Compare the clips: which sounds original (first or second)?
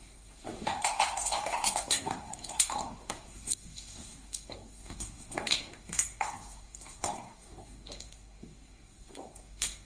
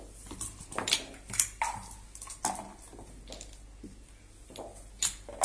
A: second